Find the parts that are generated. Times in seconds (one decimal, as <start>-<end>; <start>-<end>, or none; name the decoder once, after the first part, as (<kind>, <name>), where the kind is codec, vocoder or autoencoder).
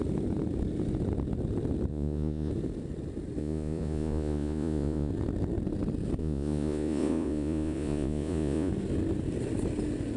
1.9-2.5 (vocoder, Vocos); 3.4-5.1; 6.2-8.7